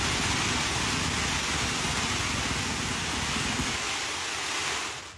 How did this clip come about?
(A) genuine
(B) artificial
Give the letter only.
A